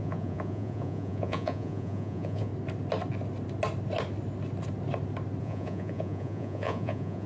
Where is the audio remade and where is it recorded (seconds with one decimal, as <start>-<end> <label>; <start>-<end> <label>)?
0.0-2.5 remade; 2.5-5.4 recorded; 5.4-7.3 remade